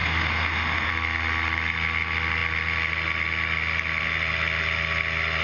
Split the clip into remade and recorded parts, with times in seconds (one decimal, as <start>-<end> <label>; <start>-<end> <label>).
0.0-0.9 remade; 0.9-5.4 recorded